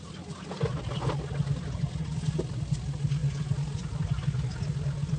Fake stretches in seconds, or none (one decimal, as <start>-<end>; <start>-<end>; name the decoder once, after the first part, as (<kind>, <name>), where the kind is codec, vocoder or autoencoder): none